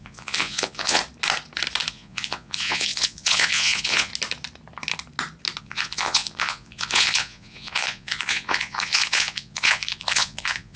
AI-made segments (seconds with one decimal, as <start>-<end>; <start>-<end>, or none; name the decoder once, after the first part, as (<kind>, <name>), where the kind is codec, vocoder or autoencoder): 0.0-1.0 (vocoder, Vocos); 1.9-4.1; 5.6-10.8